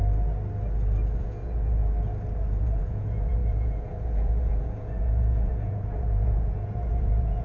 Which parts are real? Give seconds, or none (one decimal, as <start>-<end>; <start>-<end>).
0.0-1.2; 1.8-2.6